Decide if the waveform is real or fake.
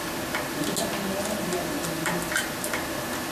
real